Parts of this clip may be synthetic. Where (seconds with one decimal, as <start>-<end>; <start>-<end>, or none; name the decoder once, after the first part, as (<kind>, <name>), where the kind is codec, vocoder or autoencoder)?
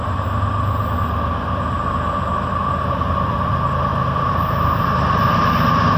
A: 2.6-3.5 (vocoder, BigVGAN v2)